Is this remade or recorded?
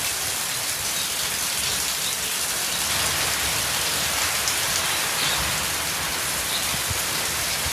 recorded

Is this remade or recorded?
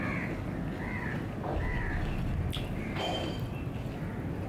recorded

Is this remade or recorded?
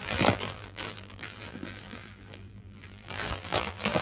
remade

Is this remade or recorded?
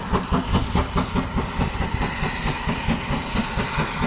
recorded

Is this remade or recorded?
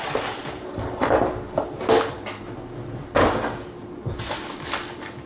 recorded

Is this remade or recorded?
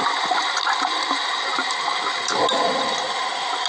recorded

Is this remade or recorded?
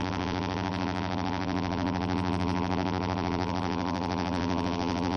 remade